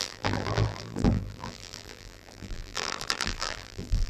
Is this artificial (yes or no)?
yes